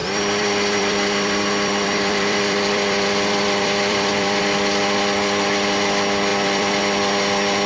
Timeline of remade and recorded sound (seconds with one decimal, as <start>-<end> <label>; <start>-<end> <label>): 0.0-4.4 remade; 4.4-6.3 recorded; 6.3-6.8 remade; 6.8-7.7 recorded